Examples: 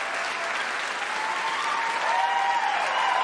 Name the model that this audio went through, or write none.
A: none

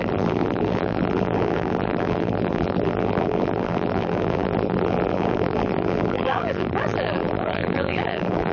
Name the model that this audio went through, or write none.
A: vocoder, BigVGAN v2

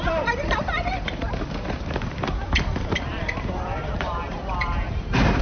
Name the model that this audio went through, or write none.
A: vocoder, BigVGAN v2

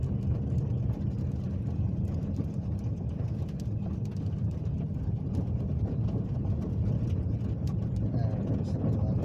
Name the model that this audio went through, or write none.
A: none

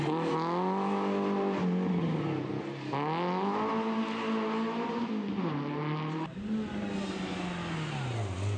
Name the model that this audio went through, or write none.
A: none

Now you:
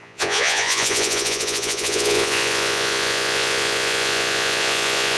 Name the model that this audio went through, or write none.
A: vocoder, Vocos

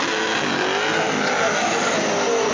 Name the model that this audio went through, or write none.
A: none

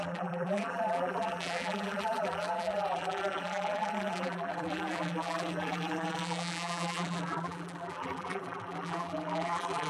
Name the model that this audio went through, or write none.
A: vocoder, BigVGAN v2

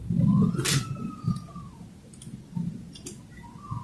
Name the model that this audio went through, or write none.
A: none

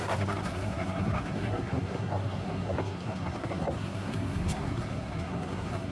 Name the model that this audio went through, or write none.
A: codec, SNAC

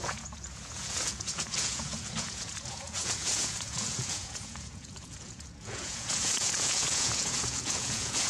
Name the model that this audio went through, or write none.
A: vocoder, Vocos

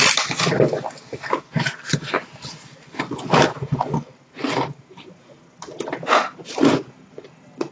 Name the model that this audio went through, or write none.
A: none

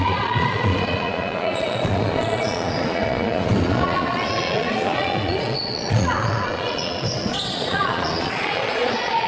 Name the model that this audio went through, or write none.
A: vocoder, Vocos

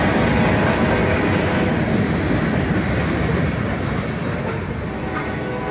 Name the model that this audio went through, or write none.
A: none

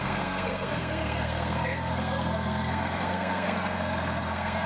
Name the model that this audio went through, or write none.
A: codec, SNAC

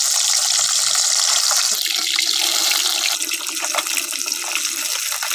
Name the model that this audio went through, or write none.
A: none